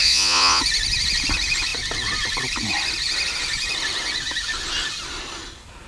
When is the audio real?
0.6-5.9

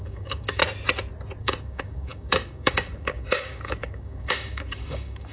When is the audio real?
0.6-1.4

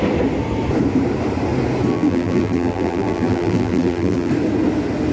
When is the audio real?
0.0-1.9; 4.3-5.1